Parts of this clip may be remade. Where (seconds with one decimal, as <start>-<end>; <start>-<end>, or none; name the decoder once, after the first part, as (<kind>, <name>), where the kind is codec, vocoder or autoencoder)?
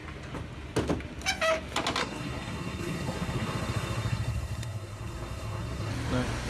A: 2.0-5.9 (codec, SNAC)